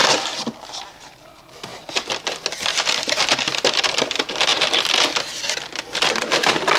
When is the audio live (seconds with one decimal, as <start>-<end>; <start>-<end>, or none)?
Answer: 0.0-0.6; 1.7-2.5; 4.5-6.8